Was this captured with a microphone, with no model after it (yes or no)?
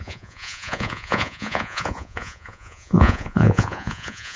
no